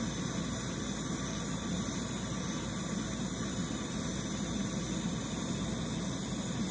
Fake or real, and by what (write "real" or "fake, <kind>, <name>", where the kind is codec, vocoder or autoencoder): real